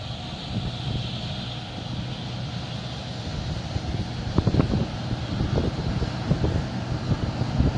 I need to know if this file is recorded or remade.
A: recorded